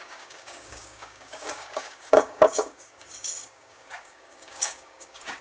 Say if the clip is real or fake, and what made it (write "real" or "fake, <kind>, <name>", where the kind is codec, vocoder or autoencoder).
fake, codec, DAC